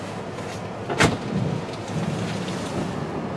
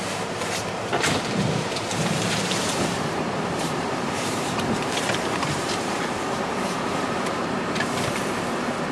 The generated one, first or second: second